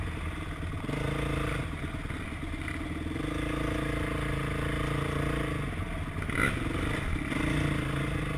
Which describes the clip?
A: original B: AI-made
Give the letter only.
A